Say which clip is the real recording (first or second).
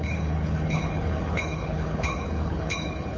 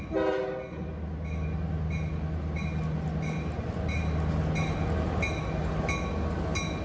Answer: second